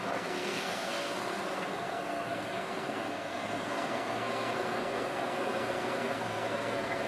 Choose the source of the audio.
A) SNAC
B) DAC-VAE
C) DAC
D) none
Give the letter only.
A